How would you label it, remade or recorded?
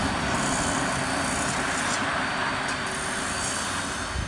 recorded